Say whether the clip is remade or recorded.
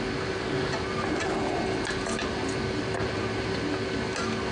recorded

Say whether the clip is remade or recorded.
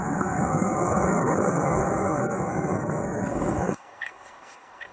remade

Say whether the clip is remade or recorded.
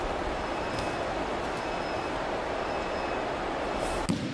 recorded